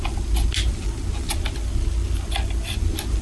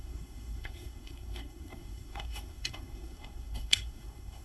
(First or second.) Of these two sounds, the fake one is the second